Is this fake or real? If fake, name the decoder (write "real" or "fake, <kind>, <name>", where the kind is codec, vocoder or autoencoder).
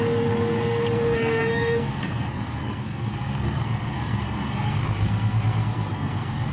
fake, codec, SNAC